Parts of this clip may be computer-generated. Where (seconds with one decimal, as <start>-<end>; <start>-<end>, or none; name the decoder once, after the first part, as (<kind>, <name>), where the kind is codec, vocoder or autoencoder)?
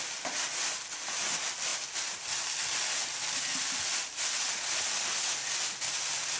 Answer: none